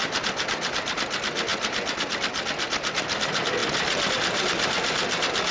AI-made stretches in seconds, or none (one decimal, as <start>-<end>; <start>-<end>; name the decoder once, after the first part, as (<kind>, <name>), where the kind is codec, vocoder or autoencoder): none